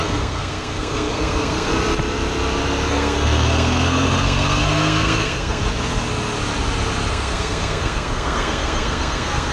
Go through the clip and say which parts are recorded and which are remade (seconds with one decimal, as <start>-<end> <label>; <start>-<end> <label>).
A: 0.0-1.7 remade; 1.7-2.9 recorded; 2.9-5.6 remade; 5.6-7.1 recorded; 7.1-9.5 remade